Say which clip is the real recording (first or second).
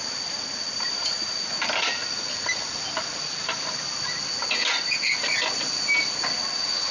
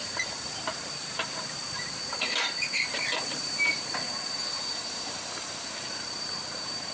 first